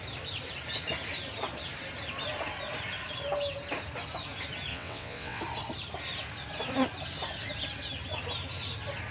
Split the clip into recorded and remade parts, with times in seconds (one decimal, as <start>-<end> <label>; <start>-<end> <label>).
0.0-4.7 recorded; 4.7-5.4 remade; 5.4-9.1 recorded